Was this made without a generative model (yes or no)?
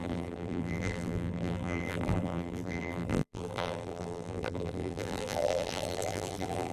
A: no